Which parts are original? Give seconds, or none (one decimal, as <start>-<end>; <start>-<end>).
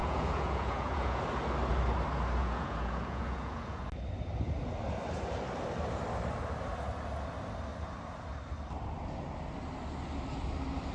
1.2-2.4; 3.8-10.9